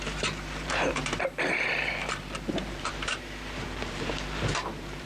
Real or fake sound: fake